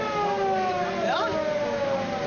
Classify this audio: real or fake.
real